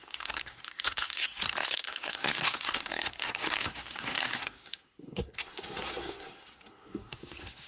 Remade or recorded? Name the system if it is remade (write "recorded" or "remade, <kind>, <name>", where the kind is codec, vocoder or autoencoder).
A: remade, codec, SNAC